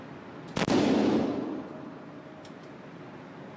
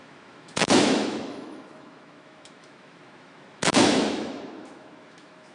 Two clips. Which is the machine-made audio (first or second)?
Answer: second